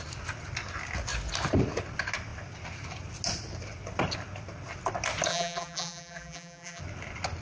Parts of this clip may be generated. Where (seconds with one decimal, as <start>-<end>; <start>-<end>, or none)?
5.3-6.8